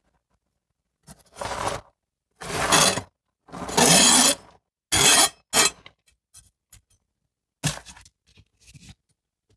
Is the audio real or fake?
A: real